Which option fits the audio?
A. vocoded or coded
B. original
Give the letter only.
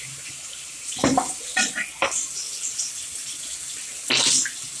B